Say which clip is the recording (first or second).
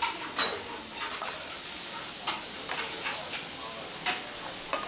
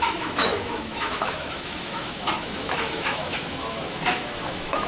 first